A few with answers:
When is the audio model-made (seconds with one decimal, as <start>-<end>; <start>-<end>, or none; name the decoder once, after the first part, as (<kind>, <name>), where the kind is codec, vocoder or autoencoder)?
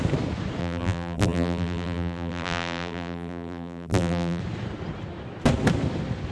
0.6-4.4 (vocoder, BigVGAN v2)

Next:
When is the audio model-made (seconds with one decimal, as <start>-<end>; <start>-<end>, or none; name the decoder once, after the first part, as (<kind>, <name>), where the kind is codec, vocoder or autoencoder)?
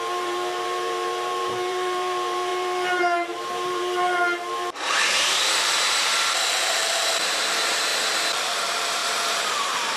0.0-7.9 (vocoder, BigVGAN v2); 8.5-10.0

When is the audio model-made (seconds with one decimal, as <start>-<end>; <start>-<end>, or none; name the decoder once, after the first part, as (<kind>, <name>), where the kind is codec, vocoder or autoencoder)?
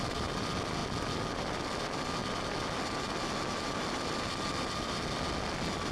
none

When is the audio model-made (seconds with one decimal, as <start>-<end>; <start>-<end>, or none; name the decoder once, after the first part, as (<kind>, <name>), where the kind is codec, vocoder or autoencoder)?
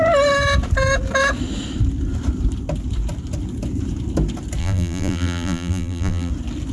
4.6-6.3 (vocoder, BigVGAN v2)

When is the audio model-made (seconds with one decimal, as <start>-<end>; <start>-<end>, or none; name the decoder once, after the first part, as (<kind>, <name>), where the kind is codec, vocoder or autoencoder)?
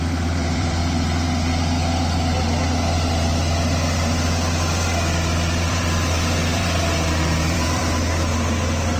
0.0-0.8 (vocoder, BigVGAN v2); 5.7-7.8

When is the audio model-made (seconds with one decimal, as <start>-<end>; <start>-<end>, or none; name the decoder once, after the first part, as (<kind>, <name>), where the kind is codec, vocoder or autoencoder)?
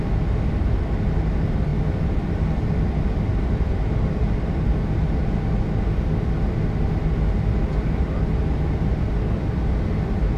none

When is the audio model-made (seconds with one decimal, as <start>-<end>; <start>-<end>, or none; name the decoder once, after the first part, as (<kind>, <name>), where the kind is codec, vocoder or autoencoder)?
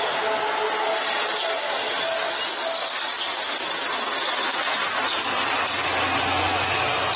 none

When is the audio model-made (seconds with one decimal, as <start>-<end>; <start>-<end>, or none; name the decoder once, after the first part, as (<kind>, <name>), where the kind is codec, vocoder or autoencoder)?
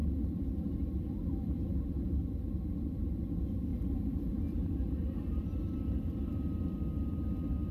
3.7-4.7 (vocoder, BigVGAN v2)